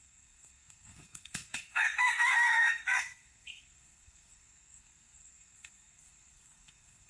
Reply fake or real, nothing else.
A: fake